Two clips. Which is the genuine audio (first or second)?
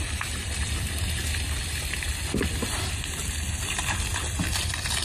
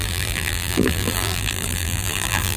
first